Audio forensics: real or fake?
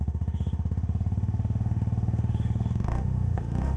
fake